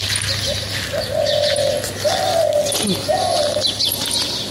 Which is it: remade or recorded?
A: recorded